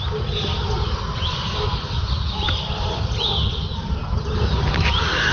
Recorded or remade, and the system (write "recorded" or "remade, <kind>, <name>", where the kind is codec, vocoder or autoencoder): recorded